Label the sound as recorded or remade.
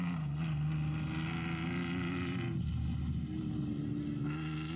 recorded